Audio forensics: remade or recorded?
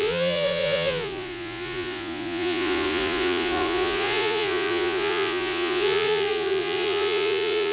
remade